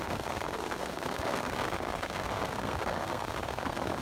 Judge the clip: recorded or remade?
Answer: remade